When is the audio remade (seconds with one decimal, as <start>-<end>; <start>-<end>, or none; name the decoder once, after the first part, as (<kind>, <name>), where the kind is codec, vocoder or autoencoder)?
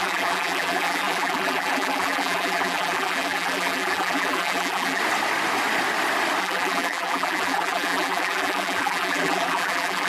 0.0-5.0 (vocoder, BigVGAN v2); 6.4-10.1